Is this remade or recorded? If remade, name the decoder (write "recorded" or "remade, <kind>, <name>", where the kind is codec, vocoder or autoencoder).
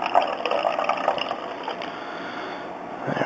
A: recorded